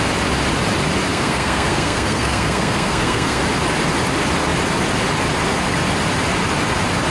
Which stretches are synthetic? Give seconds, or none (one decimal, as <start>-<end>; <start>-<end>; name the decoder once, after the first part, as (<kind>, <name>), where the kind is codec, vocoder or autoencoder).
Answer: 1.1-3.4 (codec, SNAC)